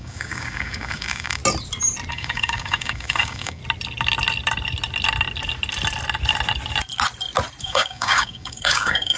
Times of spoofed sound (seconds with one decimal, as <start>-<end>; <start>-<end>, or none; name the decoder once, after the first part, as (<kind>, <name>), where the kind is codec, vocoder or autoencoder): 0.0-1.4 (codec, DAC); 2.1-3.6; 7.6-9.2